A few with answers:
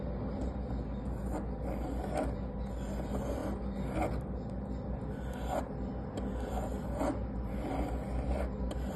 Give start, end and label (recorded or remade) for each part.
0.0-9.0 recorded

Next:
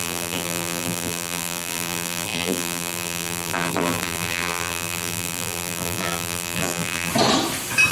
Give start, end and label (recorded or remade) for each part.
0.0-7.1 remade; 7.1-7.9 recorded

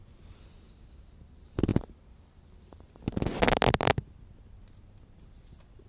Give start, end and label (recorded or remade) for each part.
0.0-5.9 recorded

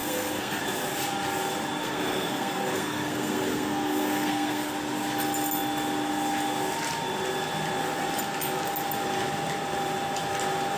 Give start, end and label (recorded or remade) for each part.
0.0-0.6 remade; 0.6-1.8 recorded; 1.8-4.7 remade; 4.7-10.8 recorded

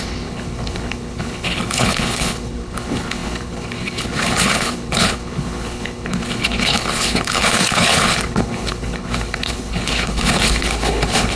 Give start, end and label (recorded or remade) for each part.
0.0-11.4 remade

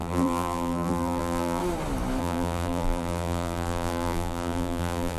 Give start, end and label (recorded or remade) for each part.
0.0-1.6 remade; 1.6-2.2 recorded; 2.2-5.2 remade